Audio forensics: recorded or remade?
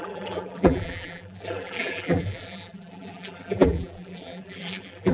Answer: remade